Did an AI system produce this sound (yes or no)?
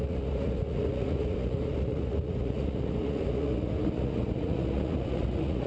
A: yes